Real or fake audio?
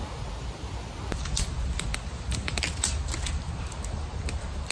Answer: real